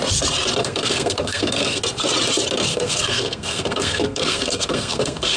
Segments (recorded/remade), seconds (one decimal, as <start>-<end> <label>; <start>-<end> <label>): 0.0-0.6 recorded; 0.6-1.8 remade; 1.8-2.7 recorded; 2.7-5.4 remade